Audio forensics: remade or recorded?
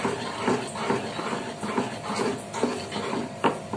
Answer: recorded